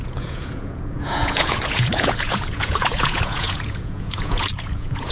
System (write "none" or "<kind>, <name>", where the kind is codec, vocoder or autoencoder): vocoder, Vocos